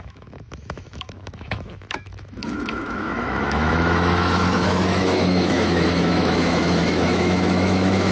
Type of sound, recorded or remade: remade